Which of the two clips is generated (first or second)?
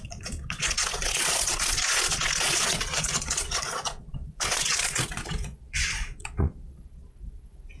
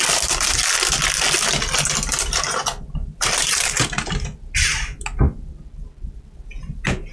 first